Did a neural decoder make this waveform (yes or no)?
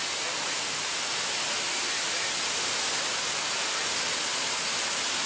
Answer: no